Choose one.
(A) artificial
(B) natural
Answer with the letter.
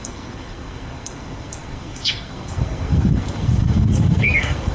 A